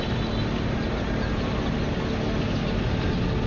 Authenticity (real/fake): real